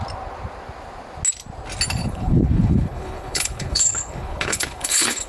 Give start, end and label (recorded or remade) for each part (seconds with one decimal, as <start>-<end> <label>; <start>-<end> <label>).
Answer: 0.0-2.0 recorded; 2.0-5.3 remade